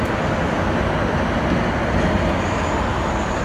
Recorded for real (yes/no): yes